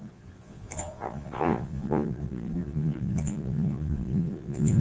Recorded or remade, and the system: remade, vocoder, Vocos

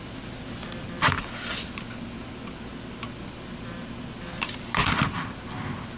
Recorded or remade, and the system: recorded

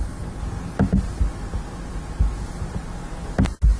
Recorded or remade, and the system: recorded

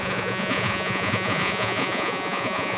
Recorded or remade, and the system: remade, vocoder, Vocos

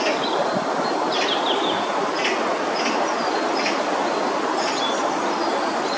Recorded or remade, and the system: recorded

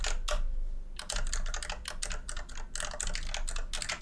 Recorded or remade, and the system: recorded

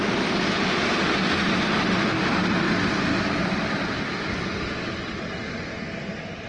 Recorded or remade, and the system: recorded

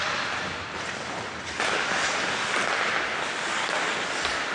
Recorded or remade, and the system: recorded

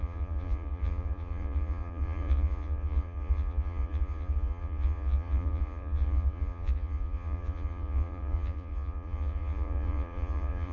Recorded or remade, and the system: remade, vocoder, Vocos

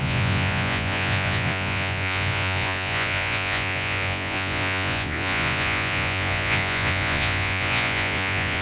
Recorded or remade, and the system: remade, vocoder, Vocos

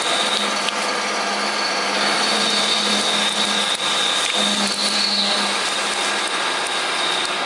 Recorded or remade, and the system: recorded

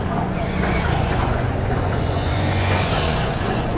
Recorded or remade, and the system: remade, vocoder, Vocos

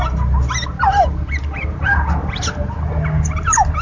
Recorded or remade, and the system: recorded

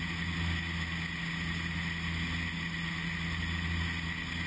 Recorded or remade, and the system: recorded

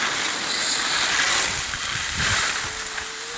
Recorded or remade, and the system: recorded